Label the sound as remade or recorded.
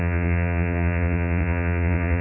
remade